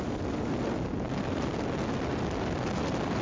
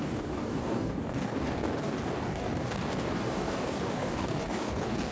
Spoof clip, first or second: second